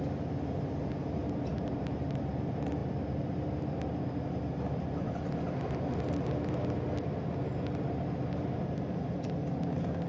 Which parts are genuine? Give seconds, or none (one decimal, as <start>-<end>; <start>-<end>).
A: 0.0-1.5; 2.3-10.1